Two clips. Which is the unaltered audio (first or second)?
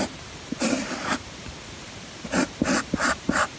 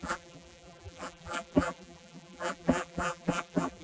first